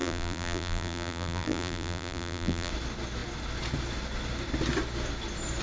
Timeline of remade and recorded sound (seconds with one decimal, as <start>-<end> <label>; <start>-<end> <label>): 0.0-2.7 remade; 2.7-5.6 recorded